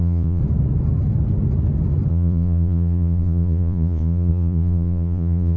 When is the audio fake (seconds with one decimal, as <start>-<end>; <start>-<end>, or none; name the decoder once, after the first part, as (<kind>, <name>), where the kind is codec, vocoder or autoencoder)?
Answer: 0.0-0.4 (vocoder, Vocos); 2.1-5.6